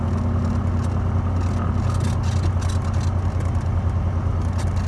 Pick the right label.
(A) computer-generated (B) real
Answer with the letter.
B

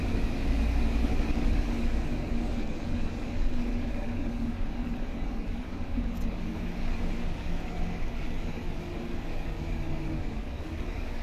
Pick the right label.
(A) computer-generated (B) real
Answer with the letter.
A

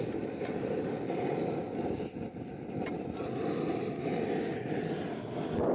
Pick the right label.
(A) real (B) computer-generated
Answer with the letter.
A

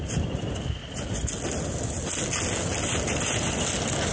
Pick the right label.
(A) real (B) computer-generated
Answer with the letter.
A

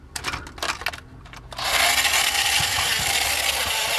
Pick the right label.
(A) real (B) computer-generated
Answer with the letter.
A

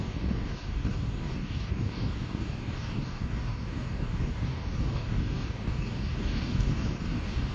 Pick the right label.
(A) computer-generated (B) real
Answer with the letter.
A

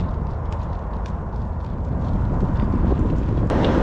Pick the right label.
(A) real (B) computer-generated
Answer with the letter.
A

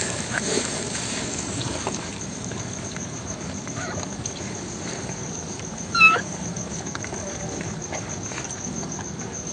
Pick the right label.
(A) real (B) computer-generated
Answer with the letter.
B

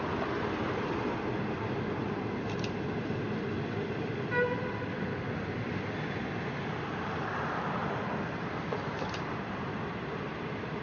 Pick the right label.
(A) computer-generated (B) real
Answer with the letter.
B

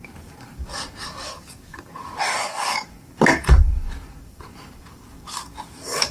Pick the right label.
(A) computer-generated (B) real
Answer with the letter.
A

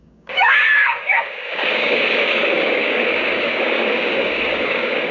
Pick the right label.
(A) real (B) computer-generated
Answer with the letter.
B